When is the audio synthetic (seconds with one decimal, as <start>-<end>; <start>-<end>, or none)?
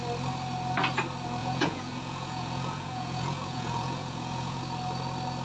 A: 1.4-4.6